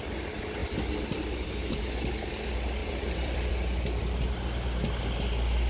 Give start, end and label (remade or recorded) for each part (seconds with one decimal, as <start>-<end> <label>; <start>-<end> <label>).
0.0-0.6 recorded; 0.6-1.8 remade; 1.8-2.8 recorded; 2.8-3.5 remade; 3.5-5.7 recorded